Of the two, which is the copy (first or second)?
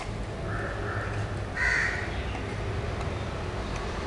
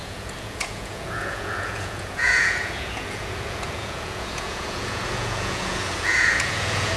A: second